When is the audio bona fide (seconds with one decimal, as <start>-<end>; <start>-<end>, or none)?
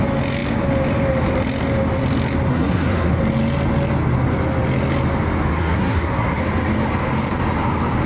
0.0-2.5; 3.2-5.5; 6.4-8.1